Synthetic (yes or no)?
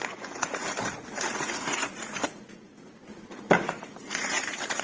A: yes